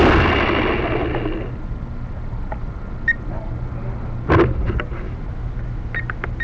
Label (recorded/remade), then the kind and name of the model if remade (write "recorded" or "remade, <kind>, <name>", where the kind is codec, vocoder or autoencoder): recorded